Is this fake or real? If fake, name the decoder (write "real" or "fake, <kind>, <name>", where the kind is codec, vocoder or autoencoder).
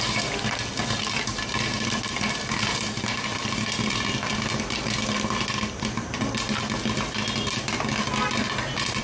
real